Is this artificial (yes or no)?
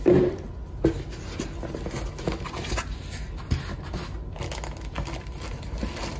no